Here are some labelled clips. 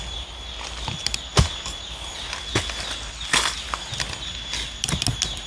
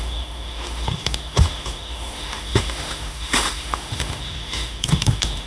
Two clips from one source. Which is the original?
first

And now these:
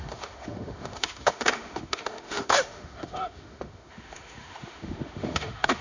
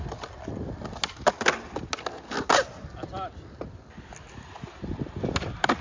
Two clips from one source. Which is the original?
second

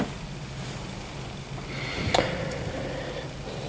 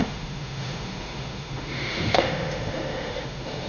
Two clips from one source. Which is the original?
first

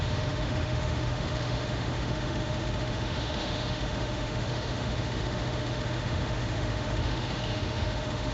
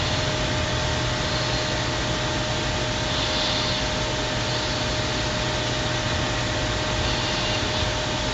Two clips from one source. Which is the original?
second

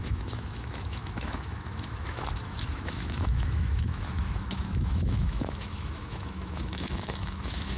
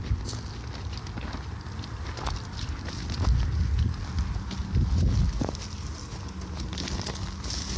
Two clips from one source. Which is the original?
second